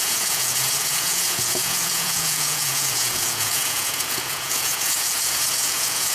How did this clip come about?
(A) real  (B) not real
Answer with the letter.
B